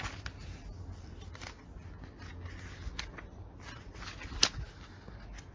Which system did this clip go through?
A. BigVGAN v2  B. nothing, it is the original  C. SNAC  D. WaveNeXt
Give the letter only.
B